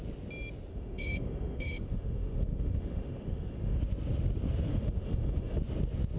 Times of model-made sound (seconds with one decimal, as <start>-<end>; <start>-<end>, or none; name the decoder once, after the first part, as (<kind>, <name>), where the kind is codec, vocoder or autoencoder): 0.7-3.8 (autoencoder, DAC-VAE); 4.7-5.6